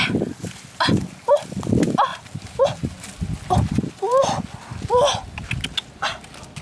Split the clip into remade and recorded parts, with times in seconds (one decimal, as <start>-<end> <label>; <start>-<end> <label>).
0.0-6.6 recorded